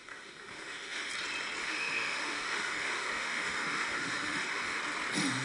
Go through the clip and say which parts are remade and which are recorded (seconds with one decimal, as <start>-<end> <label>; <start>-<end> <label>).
0.0-1.1 remade; 1.1-1.6 recorded; 1.6-4.8 remade; 4.8-5.4 recorded